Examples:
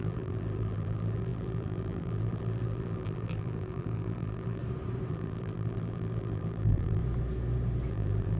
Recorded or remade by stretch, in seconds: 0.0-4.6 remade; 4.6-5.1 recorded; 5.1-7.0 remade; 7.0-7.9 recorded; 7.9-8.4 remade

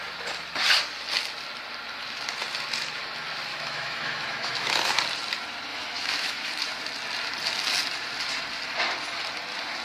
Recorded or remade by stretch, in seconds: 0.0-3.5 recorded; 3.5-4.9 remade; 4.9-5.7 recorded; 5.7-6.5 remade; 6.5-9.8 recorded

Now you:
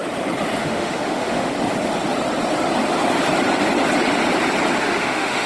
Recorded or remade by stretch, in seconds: 0.0-0.6 recorded; 0.6-1.5 remade; 1.5-4.8 recorded; 4.8-5.5 remade

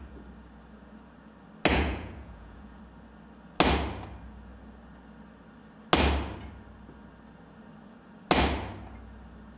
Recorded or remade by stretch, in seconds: 0.0-1.7 recorded; 1.7-2.8 remade; 2.8-9.6 recorded

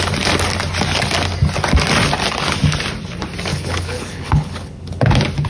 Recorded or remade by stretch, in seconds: 0.0-3.5 recorded; 3.5-5.1 remade; 5.1-5.5 recorded

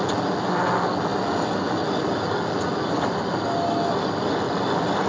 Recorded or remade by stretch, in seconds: 0.0-5.1 recorded